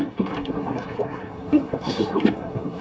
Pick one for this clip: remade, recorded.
remade